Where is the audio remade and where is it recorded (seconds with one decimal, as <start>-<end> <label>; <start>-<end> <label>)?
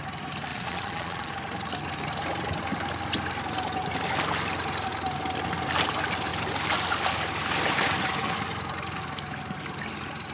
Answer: 0.0-0.5 recorded; 0.5-1.3 remade; 1.3-10.3 recorded